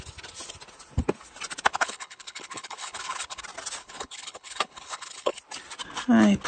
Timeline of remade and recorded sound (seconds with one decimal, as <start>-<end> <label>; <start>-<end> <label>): 0.0-1.7 recorded; 1.7-3.4 remade; 3.4-3.8 recorded; 3.8-5.4 remade; 5.4-6.5 recorded